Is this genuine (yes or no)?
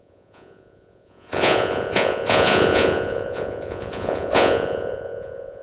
no